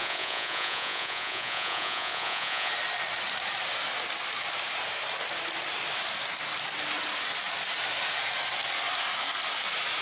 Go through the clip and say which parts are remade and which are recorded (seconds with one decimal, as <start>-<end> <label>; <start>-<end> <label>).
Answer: 0.0-2.7 remade; 2.7-10.0 recorded